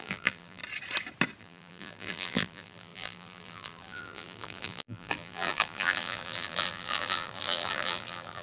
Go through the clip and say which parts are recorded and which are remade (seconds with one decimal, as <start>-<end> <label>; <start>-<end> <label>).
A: 0.0-0.6 remade; 0.6-1.4 recorded; 1.4-8.4 remade